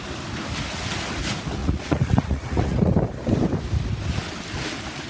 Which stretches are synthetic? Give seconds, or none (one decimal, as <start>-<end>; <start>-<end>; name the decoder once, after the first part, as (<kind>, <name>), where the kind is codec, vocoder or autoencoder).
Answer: 1.6-2.9 (vocoder, Vocos)